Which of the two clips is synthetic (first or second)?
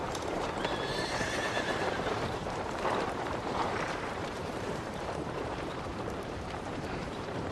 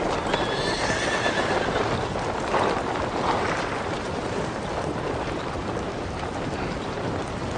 first